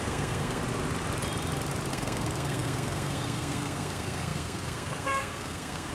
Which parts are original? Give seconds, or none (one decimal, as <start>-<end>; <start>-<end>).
0.6-1.9